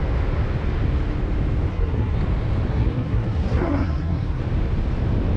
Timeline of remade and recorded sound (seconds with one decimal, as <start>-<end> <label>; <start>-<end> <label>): 0.0-1.7 recorded; 1.7-2.2 remade; 2.2-2.7 recorded; 2.7-4.4 remade; 4.4-5.4 recorded